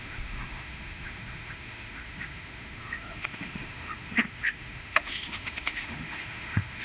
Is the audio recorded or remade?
remade